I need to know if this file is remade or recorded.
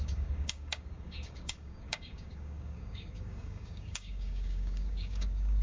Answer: remade